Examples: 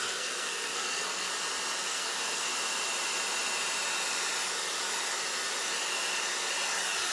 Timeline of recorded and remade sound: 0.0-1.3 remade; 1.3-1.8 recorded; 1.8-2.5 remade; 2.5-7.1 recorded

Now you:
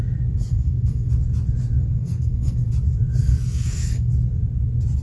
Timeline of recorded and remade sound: 0.0-0.5 recorded; 0.5-1.1 remade; 1.1-1.8 recorded; 1.8-2.7 remade; 2.7-3.2 recorded; 3.2-4.1 remade; 4.1-5.0 recorded

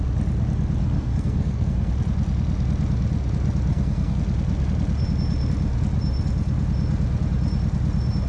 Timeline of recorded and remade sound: 0.0-0.8 recorded; 0.8-1.9 remade; 1.9-3.7 recorded; 3.7-4.2 remade; 4.2-8.3 recorded

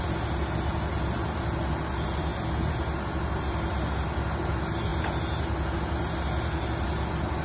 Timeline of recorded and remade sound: 0.0-7.4 recorded

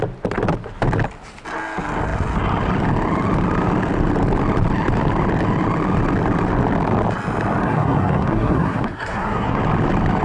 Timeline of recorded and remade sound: 0.0-7.6 recorded; 7.6-9.6 remade; 9.6-10.2 recorded

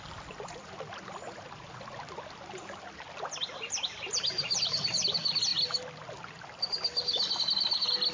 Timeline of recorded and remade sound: 0.0-8.1 recorded